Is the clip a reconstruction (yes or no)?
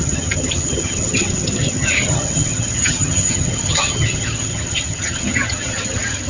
yes